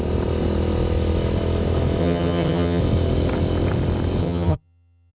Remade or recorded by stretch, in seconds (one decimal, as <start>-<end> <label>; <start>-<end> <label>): 0.0-2.0 recorded; 2.0-2.8 remade; 2.8-4.2 recorded; 4.2-5.1 remade

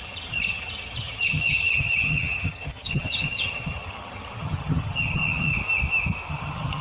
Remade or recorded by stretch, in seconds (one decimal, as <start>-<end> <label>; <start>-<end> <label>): 0.0-5.5 remade; 5.5-6.3 recorded; 6.3-6.8 remade

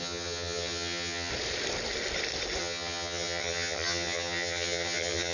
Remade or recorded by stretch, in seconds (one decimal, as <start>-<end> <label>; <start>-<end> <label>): 0.0-1.3 remade; 1.3-2.6 recorded; 2.6-5.3 remade

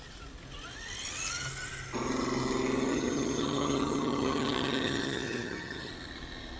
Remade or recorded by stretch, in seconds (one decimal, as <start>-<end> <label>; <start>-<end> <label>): 0.0-2.9 recorded; 2.9-5.9 remade; 5.9-6.6 recorded

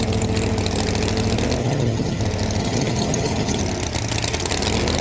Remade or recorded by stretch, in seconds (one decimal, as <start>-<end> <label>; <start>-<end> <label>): 0.0-1.6 recorded; 1.6-2.2 remade; 2.2-2.6 recorded; 2.6-3.6 remade; 3.6-5.0 recorded

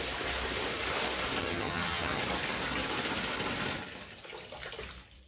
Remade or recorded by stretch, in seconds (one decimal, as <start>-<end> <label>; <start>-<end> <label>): 0.0-1.4 recorded; 1.4-2.2 remade; 2.2-5.3 recorded

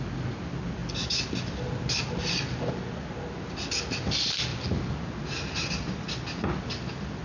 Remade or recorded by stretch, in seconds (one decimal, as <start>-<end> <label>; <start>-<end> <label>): 0.0-7.2 recorded

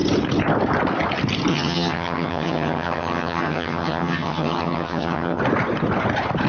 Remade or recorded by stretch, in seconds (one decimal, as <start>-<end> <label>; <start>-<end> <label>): 0.0-1.5 recorded; 1.5-5.4 remade; 5.4-6.5 recorded